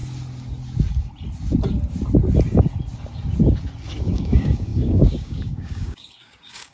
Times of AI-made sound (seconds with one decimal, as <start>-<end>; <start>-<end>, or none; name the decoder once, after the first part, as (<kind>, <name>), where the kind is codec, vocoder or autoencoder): 4.0-6.7 (codec, DAC)